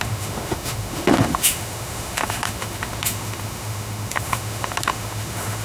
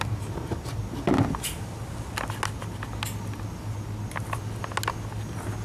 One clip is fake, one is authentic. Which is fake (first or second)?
first